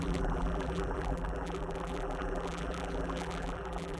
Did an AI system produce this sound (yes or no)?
yes